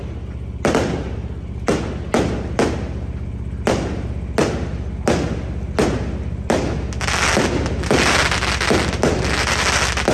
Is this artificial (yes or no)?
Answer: no